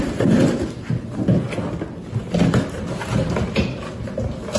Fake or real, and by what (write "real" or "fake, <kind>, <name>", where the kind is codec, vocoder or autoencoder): real